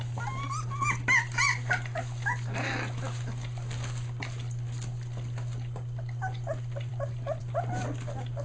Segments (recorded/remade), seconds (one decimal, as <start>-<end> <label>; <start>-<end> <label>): 0.0-8.4 recorded

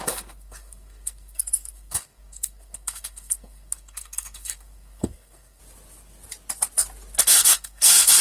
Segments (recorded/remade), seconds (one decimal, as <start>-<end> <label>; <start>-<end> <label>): 0.0-5.6 remade; 5.6-7.2 recorded; 7.2-8.2 remade

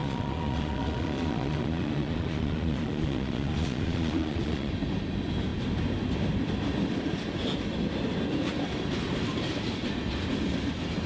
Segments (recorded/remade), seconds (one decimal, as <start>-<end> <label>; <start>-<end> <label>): 0.0-4.7 remade; 4.7-11.1 recorded

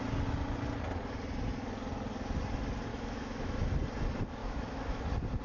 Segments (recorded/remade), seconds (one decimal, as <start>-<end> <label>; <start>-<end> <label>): 0.0-2.9 recorded; 2.9-3.7 remade; 3.7-4.4 recorded; 4.4-5.0 remade; 5.0-5.4 recorded